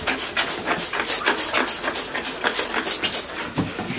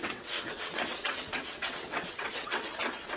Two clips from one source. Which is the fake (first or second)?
second